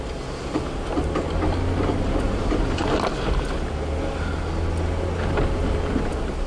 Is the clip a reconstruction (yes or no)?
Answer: no